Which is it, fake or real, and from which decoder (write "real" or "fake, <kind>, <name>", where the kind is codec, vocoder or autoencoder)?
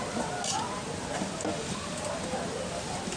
real